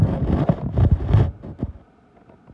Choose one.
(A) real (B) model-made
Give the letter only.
A